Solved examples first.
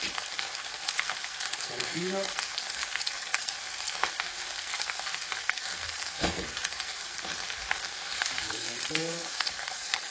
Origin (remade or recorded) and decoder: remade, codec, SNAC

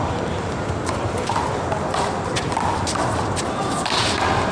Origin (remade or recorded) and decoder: recorded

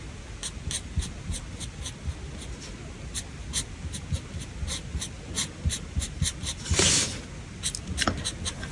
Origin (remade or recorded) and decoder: recorded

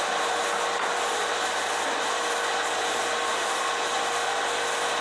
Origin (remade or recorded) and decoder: recorded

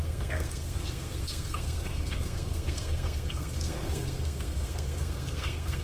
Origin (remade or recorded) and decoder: remade, codec, SNAC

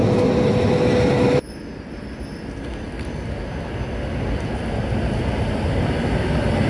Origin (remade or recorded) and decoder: recorded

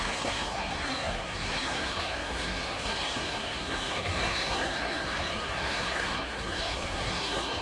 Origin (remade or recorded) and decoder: remade, codec, SNAC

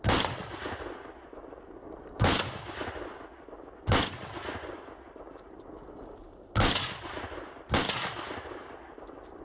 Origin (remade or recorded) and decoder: recorded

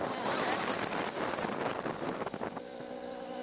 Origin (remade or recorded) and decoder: recorded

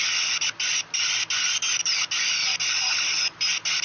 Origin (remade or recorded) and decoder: recorded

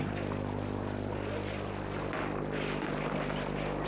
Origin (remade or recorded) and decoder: recorded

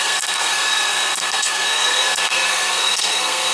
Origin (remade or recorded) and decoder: remade, codec, SNAC